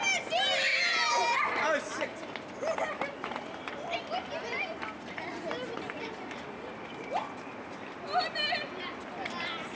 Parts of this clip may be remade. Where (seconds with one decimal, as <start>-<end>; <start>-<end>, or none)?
0.7-1.4